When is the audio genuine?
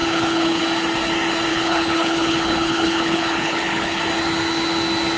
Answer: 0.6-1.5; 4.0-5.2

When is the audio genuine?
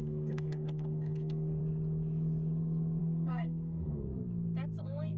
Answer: 1.6-3.0; 4.1-4.8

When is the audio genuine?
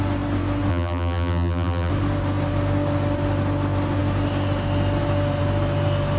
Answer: 0.0-0.7; 1.9-6.2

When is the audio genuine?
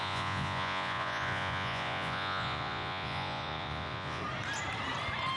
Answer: 4.2-5.4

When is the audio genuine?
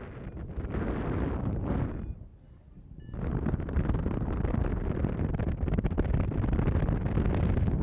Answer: 0.0-7.8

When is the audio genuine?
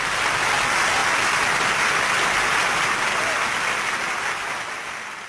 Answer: 0.0-5.3